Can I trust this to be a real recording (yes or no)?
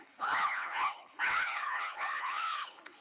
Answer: no